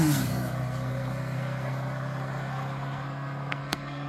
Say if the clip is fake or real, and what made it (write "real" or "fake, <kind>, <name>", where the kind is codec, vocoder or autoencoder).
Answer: fake, codec, SNAC